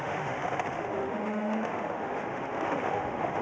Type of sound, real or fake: fake